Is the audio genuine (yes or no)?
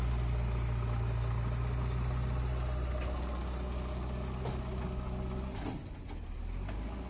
yes